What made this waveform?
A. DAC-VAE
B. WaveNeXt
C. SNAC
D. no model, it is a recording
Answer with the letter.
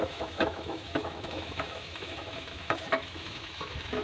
A